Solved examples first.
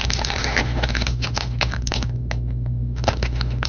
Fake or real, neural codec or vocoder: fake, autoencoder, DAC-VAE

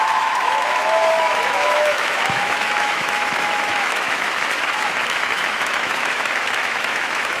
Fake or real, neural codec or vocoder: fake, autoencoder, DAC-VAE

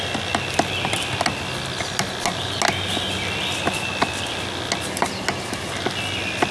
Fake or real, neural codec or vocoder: real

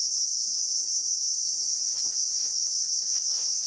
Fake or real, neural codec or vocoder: fake, autoencoder, DAC-VAE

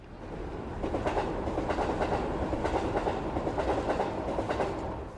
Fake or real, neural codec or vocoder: real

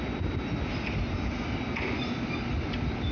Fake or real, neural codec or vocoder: real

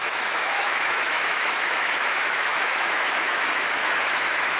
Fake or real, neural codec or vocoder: fake, autoencoder, DAC-VAE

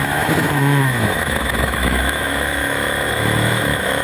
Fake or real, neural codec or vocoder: fake, autoencoder, DAC-VAE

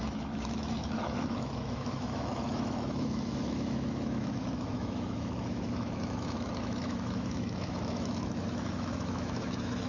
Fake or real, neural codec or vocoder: fake, autoencoder, DAC-VAE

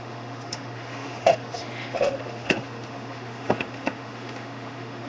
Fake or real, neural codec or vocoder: fake, autoencoder, DAC-VAE